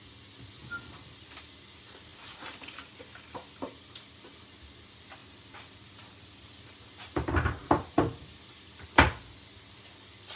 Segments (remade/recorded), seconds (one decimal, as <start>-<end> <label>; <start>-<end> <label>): 0.0-0.6 recorded; 0.6-1.5 remade; 1.5-2.1 recorded; 2.1-4.4 remade; 4.4-5.2 recorded; 5.2-8.8 remade; 8.8-10.4 recorded